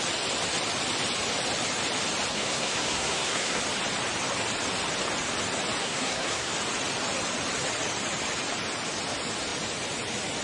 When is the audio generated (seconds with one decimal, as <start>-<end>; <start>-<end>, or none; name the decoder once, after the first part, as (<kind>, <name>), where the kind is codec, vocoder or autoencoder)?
2.3-3.6 (codec, SNAC); 5.8-6.5